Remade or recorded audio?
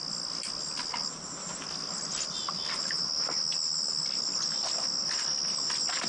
recorded